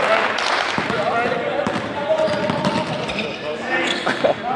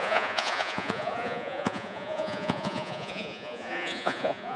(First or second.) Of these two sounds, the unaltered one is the first